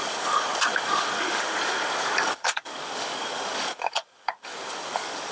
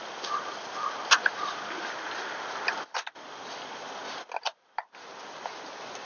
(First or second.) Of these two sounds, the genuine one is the second